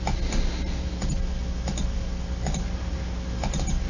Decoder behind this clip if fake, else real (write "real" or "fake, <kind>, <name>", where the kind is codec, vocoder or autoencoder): real